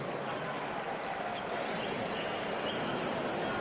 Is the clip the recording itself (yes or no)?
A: yes